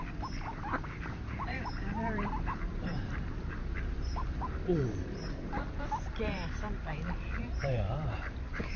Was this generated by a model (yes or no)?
yes